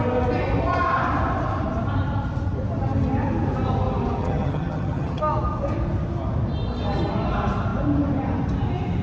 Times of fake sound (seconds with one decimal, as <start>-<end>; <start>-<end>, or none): 4.2-5.2